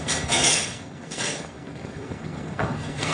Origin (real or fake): fake